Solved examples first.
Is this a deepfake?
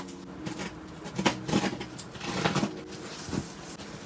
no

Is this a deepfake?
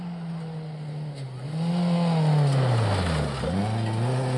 no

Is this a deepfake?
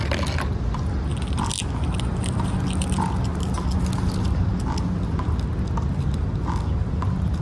no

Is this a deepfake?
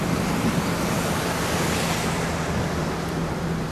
no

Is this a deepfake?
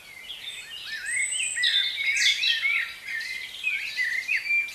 no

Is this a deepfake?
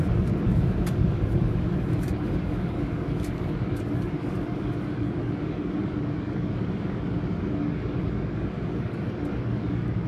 yes